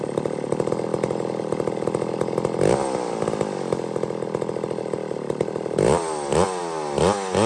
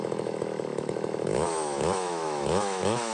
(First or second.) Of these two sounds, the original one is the first